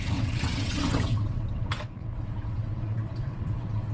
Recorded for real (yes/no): no